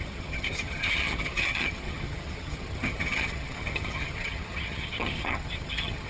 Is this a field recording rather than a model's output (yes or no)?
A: no